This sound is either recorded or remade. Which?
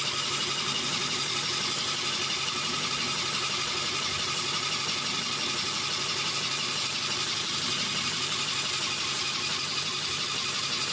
recorded